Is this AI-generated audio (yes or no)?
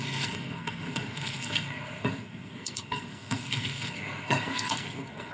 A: yes